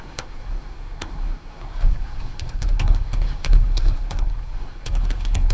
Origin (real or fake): fake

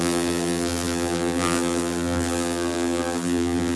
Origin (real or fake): fake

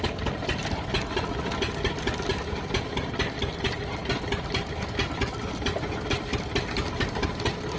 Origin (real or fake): real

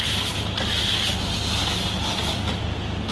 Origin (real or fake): real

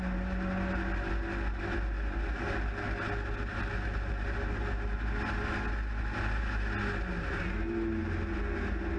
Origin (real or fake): real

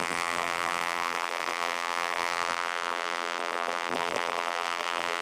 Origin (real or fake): fake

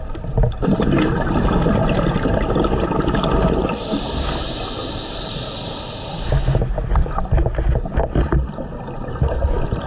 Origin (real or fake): real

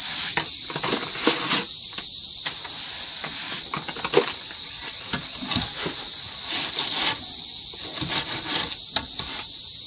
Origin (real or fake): real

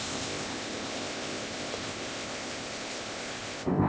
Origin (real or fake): fake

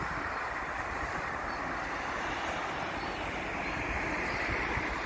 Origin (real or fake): real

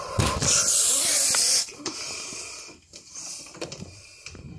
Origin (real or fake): real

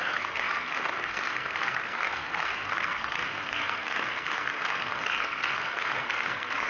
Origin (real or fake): fake